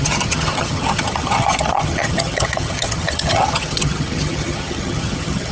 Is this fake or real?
fake